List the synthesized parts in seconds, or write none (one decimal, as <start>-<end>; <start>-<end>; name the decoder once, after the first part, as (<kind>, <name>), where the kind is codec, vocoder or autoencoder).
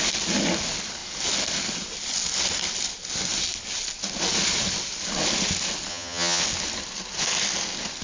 5.9-6.4 (vocoder, HiFi-GAN)